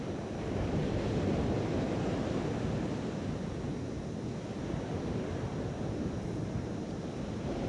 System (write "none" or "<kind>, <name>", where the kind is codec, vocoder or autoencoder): none